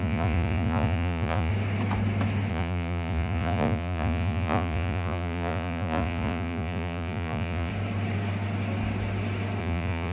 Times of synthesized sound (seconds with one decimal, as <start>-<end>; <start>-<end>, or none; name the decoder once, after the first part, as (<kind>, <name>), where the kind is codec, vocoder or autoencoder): 0.0-1.5 (vocoder, Vocos); 2.5-7.7; 9.6-10.1